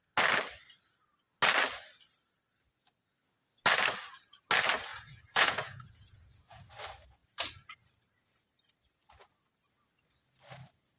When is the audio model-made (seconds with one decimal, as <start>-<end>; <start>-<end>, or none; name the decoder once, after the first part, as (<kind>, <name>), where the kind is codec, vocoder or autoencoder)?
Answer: 4.9-6.6 (vocoder, Vocos)